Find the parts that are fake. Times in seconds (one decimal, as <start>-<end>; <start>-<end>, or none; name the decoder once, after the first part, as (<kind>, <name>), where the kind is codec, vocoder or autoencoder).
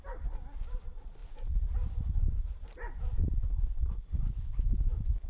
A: none